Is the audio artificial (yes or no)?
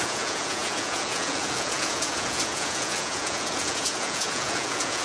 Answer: yes